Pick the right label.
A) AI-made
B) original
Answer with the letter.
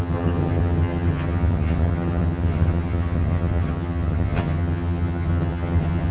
A